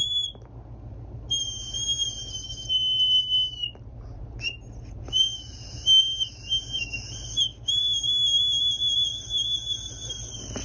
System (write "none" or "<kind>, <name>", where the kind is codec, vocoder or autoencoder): none